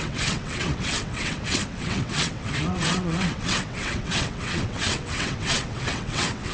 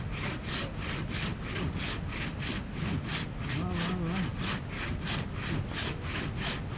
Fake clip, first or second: first